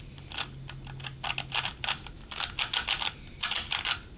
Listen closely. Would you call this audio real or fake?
real